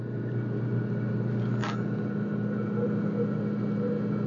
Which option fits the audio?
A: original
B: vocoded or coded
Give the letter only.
A